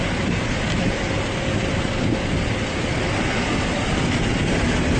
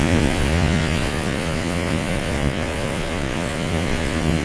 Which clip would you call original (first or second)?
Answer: first